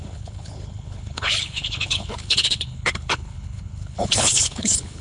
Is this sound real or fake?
fake